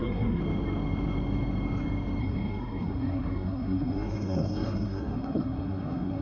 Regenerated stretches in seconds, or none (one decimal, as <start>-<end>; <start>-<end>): 0.0-0.4; 2.2-6.2